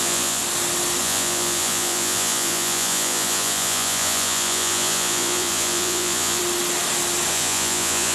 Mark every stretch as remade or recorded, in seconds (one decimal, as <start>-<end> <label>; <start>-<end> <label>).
0.0-0.4 remade; 0.4-1.0 recorded; 1.0-6.4 remade; 6.4-7.3 recorded; 7.3-8.1 remade